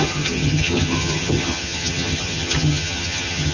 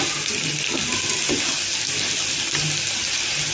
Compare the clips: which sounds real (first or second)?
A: second